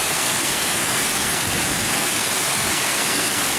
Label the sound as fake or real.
fake